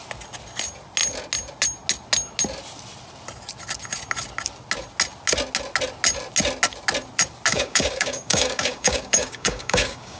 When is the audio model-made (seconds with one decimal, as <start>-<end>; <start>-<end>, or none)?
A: 7.5-10.2